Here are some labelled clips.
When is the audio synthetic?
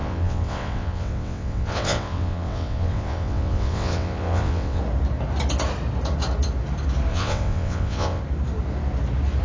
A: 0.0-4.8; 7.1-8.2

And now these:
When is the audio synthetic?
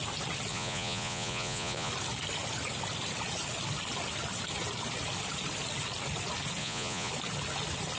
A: 0.5-1.9; 6.6-7.1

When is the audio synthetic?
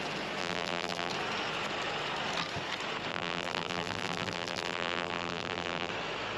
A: 0.4-1.1; 3.1-5.9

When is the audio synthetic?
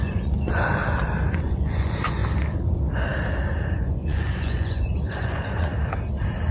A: 0.0-0.8; 1.3-2.2; 3.8-5.7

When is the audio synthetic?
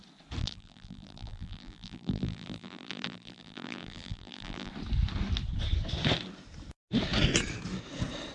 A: 0.4-4.7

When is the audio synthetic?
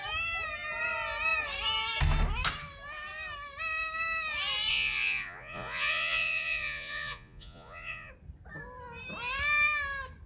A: 4.7-8.1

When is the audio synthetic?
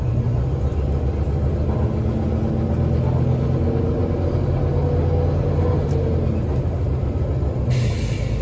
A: none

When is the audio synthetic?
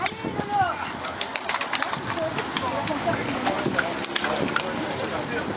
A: none